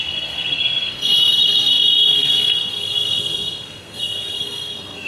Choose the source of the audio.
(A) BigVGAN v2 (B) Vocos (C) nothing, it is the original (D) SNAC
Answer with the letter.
D